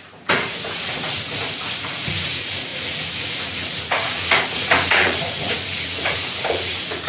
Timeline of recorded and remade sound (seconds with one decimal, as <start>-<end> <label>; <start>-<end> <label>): 0.0-7.1 remade